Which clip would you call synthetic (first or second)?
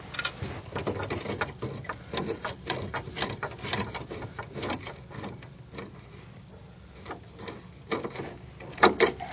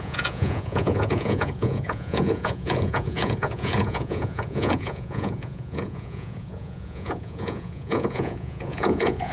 second